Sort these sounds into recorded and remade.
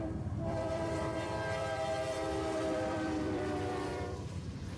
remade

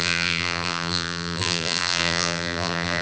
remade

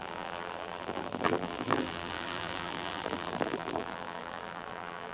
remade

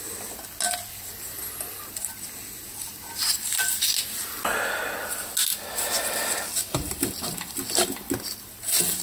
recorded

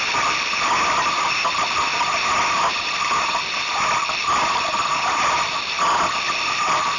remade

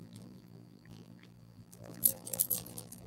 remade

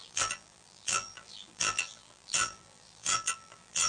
remade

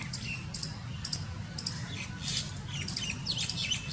recorded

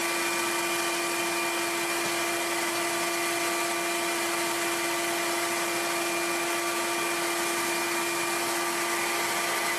recorded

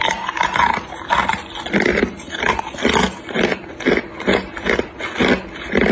recorded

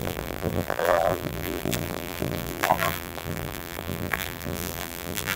remade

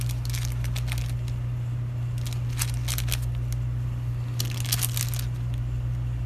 recorded